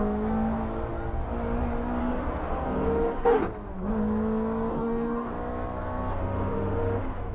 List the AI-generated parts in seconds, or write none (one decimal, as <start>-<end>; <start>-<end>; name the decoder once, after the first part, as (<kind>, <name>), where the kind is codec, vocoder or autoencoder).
2.0-3.4 (autoencoder, DAC-VAE); 4.7-5.3; 6.1-7.3